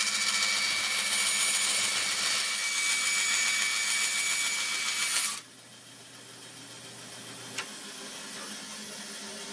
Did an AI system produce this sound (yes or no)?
no